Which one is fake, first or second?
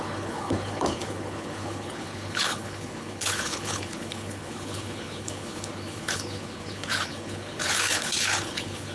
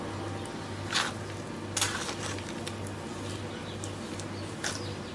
first